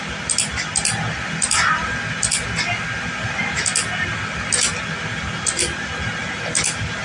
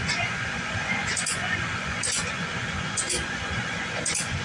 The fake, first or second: second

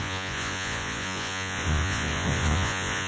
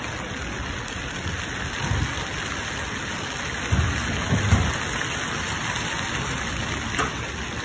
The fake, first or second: first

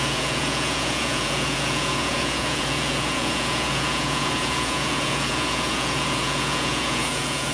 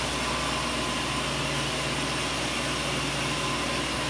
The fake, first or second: first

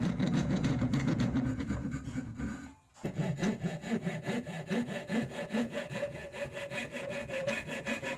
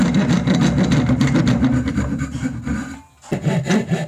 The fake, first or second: first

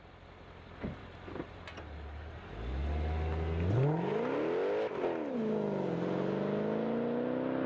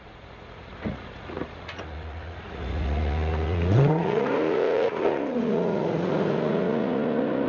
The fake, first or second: second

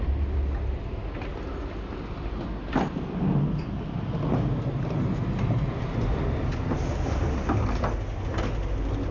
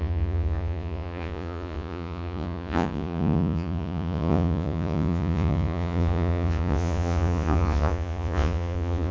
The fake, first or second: second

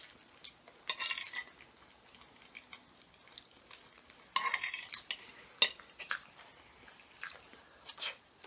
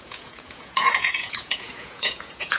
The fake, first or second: second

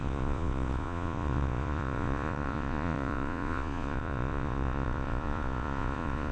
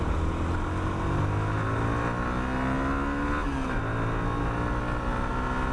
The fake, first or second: first